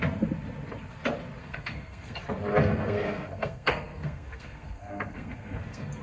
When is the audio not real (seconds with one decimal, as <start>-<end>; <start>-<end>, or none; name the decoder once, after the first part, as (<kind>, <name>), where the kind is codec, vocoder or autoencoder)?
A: 1.4-2.2 (codec, SNAC); 2.6-6.0